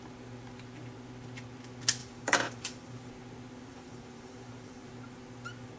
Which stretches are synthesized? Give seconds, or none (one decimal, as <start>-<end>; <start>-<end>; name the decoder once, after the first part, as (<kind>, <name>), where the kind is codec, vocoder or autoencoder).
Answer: 2.0-3.1 (vocoder, BigVGAN v2); 3.7-4.9